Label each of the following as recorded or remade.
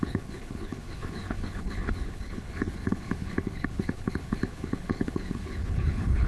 remade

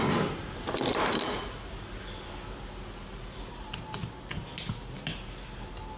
recorded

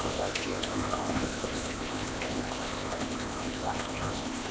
remade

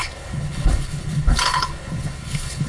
remade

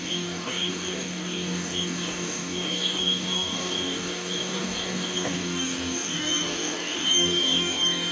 remade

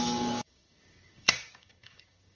remade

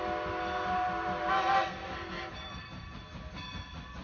recorded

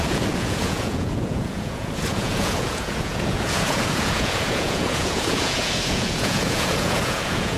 remade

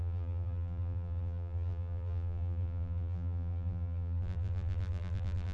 remade